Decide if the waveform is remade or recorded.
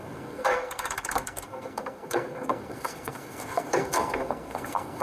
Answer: remade